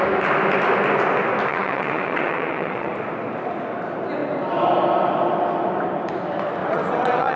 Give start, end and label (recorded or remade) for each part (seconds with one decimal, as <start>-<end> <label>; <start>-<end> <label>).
0.0-1.5 recorded; 1.5-2.9 remade; 2.9-6.6 recorded; 6.6-7.4 remade

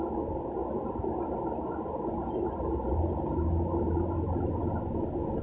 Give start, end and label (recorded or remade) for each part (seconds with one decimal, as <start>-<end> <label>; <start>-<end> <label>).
0.0-5.4 recorded

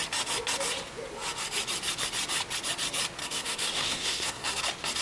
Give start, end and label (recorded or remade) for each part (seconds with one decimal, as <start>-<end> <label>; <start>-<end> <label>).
0.0-3.2 recorded; 3.2-4.6 remade; 4.6-5.0 recorded